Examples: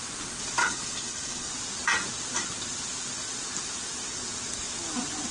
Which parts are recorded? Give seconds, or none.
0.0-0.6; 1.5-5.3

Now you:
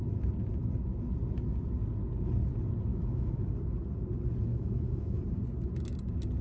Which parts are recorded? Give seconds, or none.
0.0-2.9; 3.5-4.5; 5.2-6.4

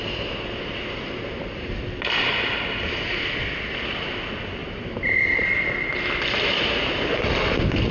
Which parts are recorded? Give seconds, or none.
0.0-7.9

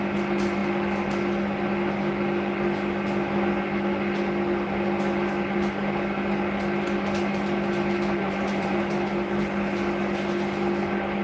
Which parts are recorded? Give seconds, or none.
0.0-8.2; 8.8-11.2